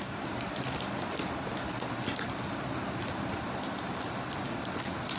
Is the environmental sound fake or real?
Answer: real